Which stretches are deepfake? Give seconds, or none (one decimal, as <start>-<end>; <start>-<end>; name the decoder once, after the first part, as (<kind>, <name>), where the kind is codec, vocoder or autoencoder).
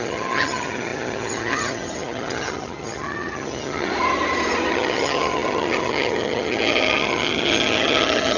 0.0-3.9 (vocoder, HiFi-GAN); 4.7-8.4